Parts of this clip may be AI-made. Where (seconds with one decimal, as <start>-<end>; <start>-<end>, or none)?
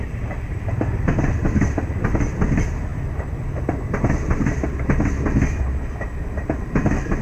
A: 0.0-7.2